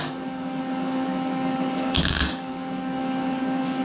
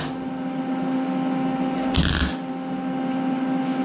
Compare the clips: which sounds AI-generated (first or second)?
first